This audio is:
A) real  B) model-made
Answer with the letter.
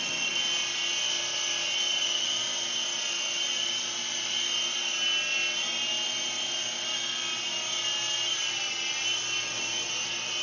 A